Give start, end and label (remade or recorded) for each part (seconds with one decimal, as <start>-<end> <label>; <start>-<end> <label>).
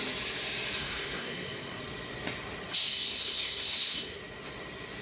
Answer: 0.0-0.8 recorded; 0.8-1.8 remade; 1.8-2.7 recorded; 2.7-4.2 remade; 4.2-5.0 recorded